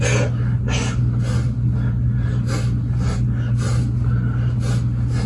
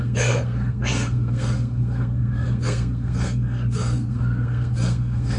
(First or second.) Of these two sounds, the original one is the first